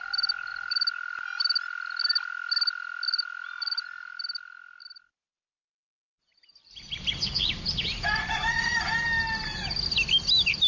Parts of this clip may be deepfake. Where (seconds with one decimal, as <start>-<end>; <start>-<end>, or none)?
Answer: none